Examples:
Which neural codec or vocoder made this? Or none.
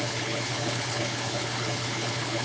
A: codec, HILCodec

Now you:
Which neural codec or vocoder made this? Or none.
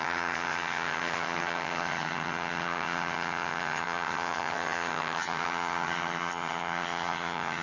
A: vocoder, HiFi-GAN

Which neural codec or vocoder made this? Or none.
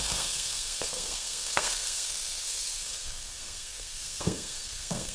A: codec, SNAC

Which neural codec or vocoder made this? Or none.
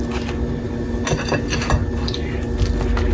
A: none